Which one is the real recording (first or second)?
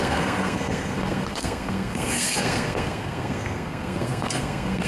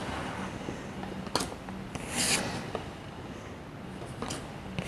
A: second